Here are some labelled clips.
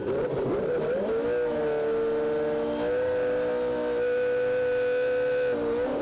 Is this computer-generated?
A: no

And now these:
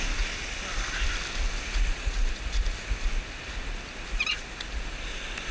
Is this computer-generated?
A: no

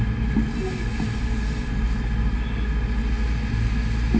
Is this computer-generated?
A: no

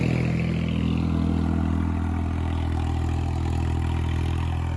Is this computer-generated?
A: no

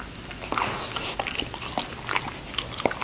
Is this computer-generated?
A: no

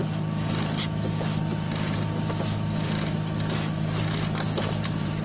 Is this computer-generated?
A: no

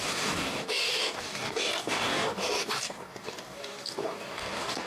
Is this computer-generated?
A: yes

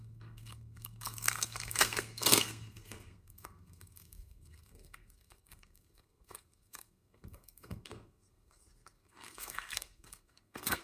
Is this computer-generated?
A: yes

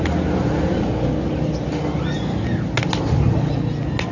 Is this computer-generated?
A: no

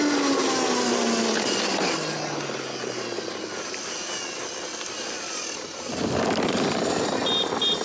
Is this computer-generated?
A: no